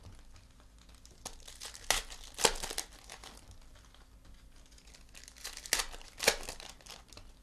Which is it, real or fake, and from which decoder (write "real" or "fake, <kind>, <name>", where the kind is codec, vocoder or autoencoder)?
real